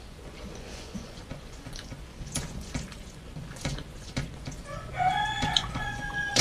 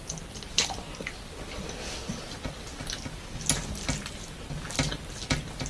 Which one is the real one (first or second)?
second